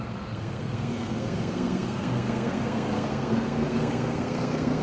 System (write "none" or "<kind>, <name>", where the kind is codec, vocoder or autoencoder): codec, SNAC